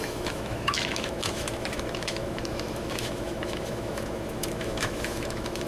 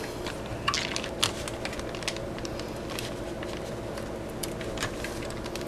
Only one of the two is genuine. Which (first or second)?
second